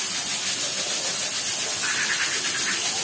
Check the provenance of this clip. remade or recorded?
recorded